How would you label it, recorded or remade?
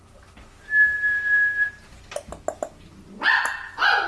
recorded